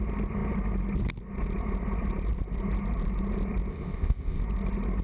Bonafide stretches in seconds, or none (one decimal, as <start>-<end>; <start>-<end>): 0.0-3.7; 4.4-5.0